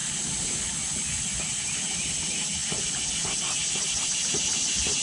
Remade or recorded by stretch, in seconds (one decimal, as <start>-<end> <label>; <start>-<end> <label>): 0.0-5.0 recorded